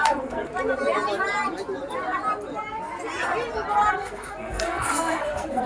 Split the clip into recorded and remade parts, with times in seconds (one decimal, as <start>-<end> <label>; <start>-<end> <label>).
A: 0.0-0.5 remade; 0.5-3.9 recorded; 3.9-5.7 remade